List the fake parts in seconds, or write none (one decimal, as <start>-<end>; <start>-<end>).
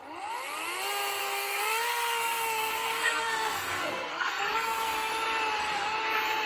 1.2-5.1